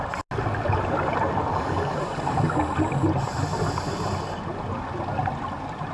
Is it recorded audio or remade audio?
recorded